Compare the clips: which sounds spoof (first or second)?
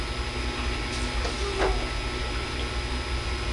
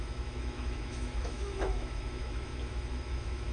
second